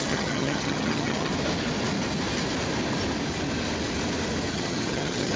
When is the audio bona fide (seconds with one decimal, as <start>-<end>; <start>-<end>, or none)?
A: 1.3-4.5